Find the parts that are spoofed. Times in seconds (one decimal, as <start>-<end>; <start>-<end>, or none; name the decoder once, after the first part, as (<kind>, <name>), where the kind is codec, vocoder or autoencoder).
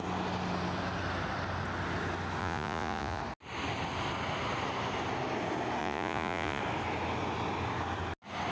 2.4-3.2 (vocoder, Vocos); 5.8-6.6